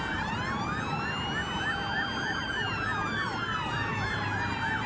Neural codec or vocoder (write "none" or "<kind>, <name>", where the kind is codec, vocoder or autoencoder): none